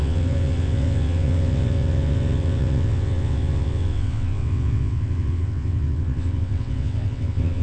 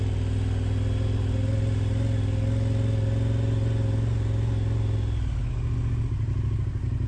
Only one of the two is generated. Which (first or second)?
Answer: first